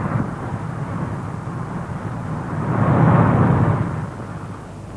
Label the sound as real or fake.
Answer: real